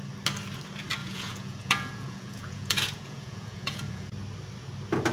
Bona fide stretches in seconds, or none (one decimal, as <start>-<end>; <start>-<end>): 0.0-1.0; 4.1-5.1